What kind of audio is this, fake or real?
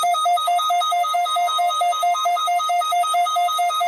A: fake